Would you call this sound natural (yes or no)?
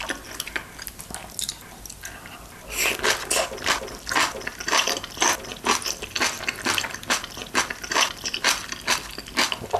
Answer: yes